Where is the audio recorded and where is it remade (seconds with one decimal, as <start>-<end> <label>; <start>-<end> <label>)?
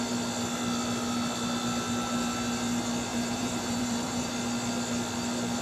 0.0-3.1 recorded; 3.1-4.3 remade; 4.3-5.6 recorded